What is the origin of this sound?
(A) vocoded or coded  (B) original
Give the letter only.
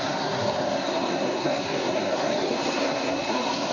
A